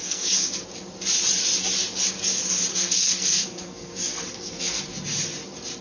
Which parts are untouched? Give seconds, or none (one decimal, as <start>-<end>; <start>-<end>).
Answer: 0.6-2.7; 4.8-5.8